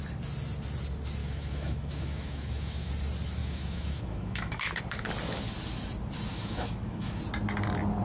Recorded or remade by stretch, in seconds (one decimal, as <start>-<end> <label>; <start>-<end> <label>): 0.0-1.2 recorded; 1.2-2.9 remade; 2.9-3.4 recorded; 3.4-4.8 remade; 4.8-6.3 recorded; 6.3-7.2 remade; 7.2-8.0 recorded

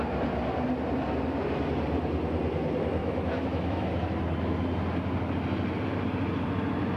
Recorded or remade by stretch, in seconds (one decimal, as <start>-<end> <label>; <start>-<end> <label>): 0.0-3.0 recorded; 3.0-3.9 remade; 3.9-7.0 recorded

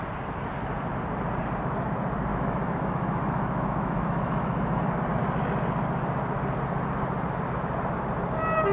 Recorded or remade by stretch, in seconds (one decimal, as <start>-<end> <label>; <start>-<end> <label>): 0.0-2.3 recorded; 2.3-4.8 remade; 4.8-8.7 recorded

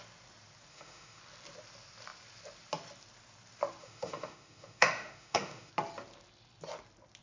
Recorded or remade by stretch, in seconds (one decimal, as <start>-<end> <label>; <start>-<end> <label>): 0.0-0.7 recorded; 0.7-1.2 remade; 1.2-3.8 recorded; 3.8-5.7 remade; 5.7-7.2 recorded